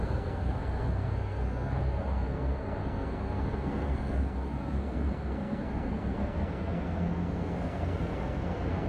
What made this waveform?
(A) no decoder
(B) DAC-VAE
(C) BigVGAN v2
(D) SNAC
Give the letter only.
D